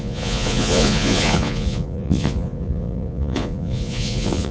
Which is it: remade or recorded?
remade